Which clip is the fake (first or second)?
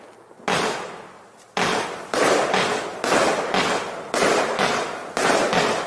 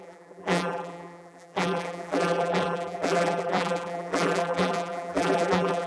second